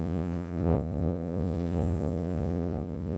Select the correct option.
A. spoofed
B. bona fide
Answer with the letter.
A